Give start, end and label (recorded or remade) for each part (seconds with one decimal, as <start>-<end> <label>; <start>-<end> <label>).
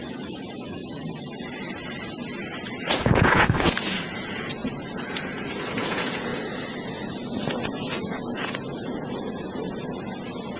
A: 0.0-0.8 remade; 0.8-3.0 recorded; 3.0-10.6 remade